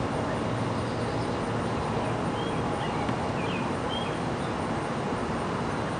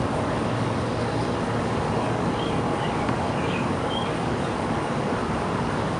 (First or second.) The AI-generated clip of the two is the second